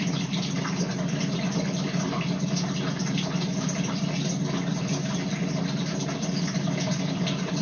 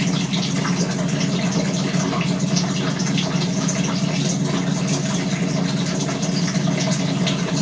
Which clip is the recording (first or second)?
second